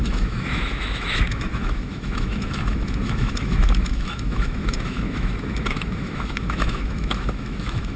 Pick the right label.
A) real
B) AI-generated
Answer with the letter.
B